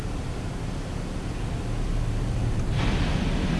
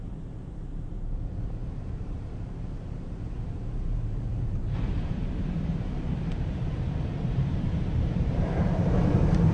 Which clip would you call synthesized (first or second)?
second